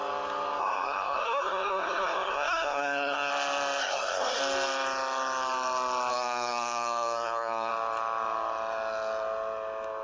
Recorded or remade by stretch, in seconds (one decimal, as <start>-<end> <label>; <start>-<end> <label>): 0.0-0.6 recorded; 0.6-3.3 remade; 3.3-3.8 recorded; 3.8-4.4 remade; 4.4-6.1 recorded; 6.1-7.7 remade; 7.7-10.0 recorded